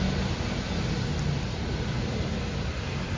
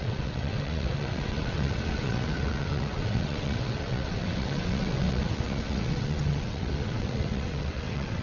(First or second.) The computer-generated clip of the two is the second